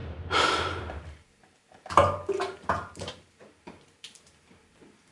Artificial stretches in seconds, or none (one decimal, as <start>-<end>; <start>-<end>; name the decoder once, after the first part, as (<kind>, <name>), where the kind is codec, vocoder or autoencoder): 0.0-5.1 (vocoder, BigVGAN v2)